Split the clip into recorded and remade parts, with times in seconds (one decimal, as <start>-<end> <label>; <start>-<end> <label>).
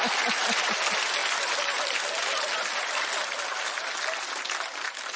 0.0-5.2 recorded